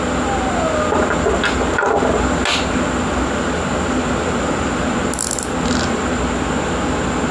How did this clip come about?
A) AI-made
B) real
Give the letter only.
B